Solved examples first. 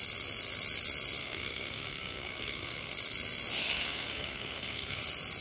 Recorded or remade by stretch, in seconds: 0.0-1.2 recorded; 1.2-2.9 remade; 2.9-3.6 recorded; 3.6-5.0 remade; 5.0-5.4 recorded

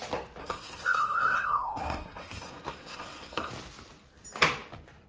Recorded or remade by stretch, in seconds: 0.0-0.4 recorded; 0.4-3.5 remade; 3.5-5.1 recorded

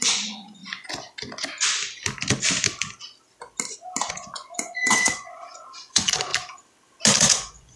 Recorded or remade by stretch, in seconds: 0.0-0.6 remade; 0.6-4.1 recorded; 4.1-6.3 remade; 6.3-7.2 recorded; 7.2-7.8 remade